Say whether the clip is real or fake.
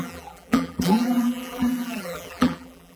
fake